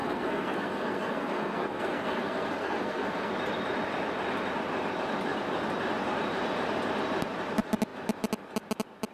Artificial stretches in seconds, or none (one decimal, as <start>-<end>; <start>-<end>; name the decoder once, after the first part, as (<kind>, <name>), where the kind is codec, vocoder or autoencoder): 0.0-3.3 (codec, SNAC)